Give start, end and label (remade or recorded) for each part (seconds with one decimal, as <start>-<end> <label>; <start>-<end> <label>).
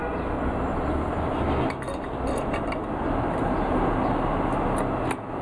0.0-5.4 recorded